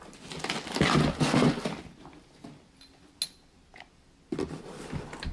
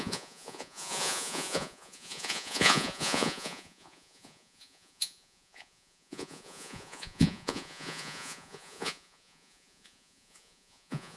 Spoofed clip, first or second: second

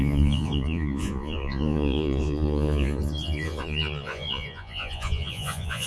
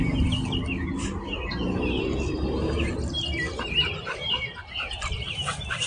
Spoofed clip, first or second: first